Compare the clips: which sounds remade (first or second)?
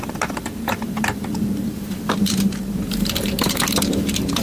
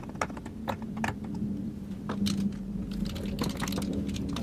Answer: first